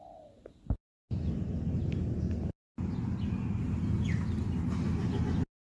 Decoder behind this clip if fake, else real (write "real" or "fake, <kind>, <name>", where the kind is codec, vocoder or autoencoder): real